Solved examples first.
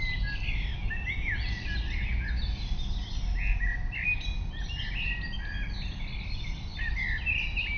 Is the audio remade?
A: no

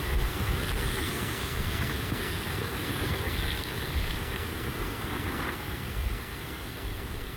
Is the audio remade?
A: yes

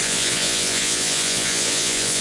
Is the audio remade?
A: yes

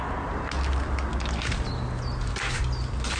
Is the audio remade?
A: no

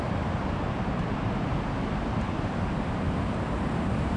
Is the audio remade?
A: yes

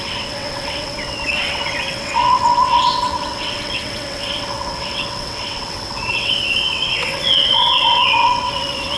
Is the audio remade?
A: yes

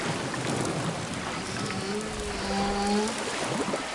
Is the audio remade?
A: no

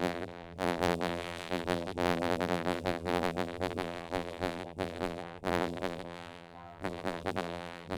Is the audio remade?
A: yes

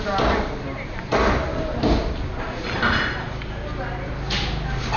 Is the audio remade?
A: no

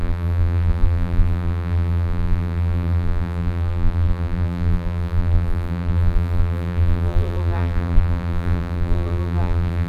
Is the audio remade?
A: yes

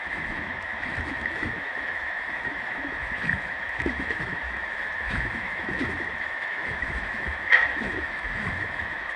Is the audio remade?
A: yes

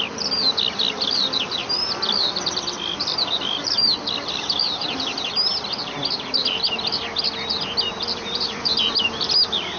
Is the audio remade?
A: yes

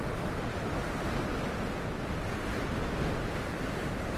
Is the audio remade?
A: no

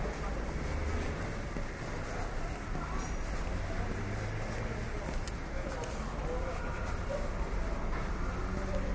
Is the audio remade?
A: no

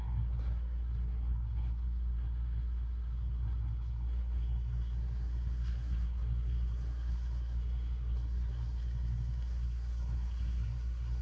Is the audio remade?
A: yes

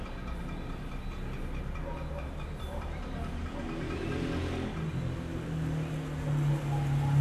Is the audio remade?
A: no